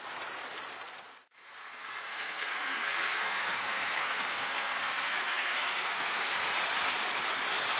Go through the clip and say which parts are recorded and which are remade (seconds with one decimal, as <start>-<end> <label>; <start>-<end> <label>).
0.0-1.6 recorded; 1.6-6.2 remade; 6.2-7.8 recorded